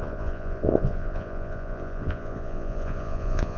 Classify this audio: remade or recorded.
remade